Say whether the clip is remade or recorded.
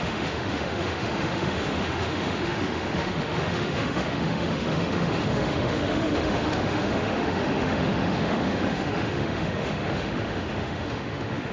remade